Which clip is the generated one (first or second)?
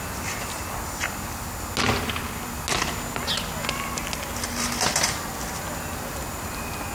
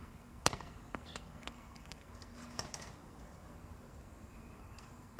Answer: second